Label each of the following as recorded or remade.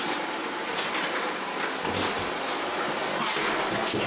recorded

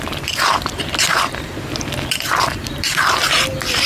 remade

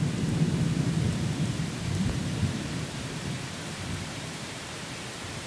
remade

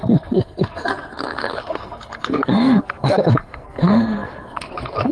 remade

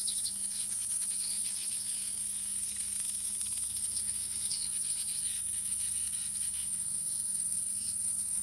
remade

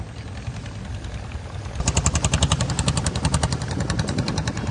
recorded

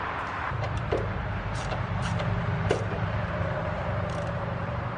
remade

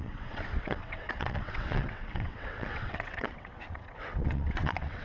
remade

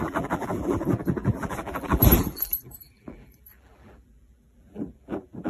remade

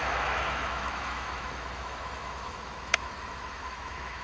remade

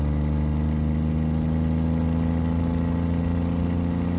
recorded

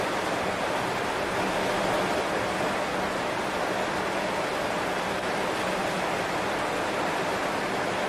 recorded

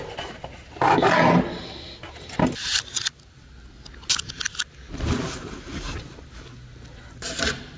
recorded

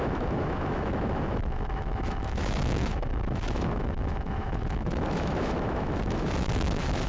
remade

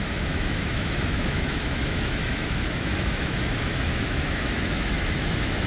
remade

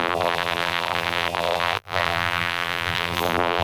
remade